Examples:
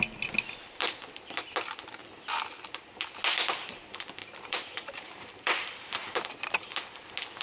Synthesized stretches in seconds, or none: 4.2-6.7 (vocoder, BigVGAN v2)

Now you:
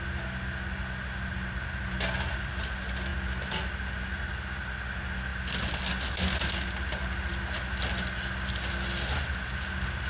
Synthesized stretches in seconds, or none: none

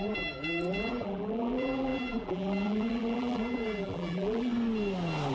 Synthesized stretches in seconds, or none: 0.0-4.5 (vocoder, BigVGAN v2)

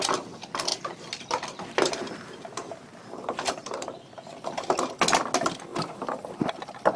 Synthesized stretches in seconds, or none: 0.7-4.9 (vocoder, BigVGAN v2); 5.7-6.4

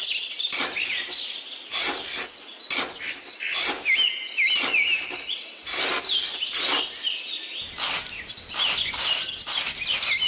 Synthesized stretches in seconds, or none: none

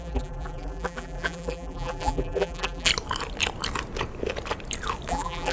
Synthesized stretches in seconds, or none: 0.0-2.9 (vocoder, BigVGAN v2); 5.1-5.5

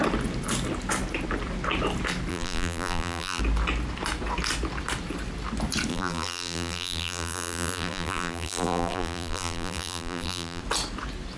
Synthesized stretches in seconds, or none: 2.3-3.4 (vocoder, BigVGAN v2); 5.9-10.6